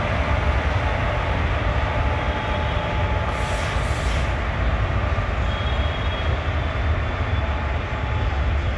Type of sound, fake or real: real